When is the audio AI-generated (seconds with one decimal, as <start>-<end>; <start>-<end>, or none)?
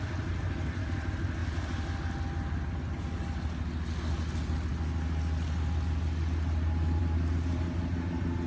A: none